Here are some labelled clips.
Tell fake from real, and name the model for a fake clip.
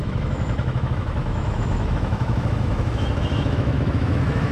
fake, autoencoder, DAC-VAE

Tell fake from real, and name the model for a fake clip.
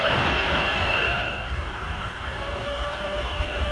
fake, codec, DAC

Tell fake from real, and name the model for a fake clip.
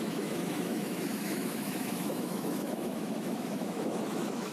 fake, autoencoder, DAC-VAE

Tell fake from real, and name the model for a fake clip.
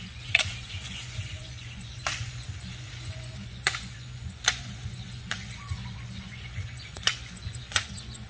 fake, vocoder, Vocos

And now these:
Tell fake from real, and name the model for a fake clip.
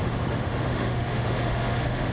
fake, autoencoder, DAC-VAE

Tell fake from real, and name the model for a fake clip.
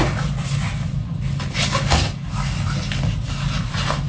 real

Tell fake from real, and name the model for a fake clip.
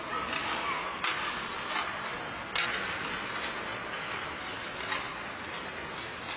real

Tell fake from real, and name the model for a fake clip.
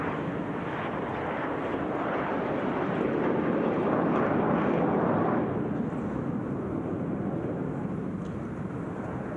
real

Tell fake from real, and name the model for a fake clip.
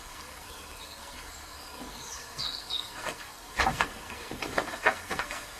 fake, codec, SNAC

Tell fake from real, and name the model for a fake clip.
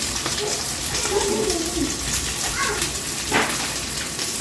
real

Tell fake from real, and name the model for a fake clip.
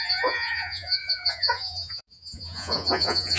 fake, vocoder, Vocos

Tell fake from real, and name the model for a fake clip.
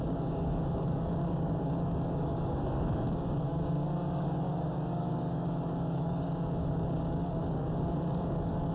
fake, codec, DAC